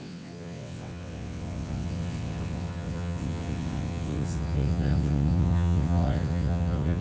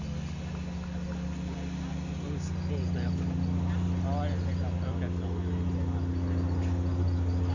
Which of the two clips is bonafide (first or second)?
second